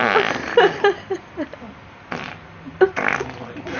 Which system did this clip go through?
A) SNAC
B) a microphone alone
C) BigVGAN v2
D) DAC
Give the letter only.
B